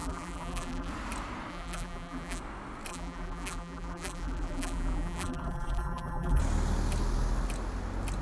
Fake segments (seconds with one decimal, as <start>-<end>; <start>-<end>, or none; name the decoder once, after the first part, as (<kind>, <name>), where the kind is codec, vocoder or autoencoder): 0.0-0.9 (vocoder, BigVGAN v2); 1.5-2.4; 2.9-6.4